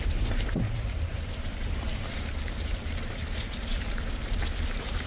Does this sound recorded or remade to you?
remade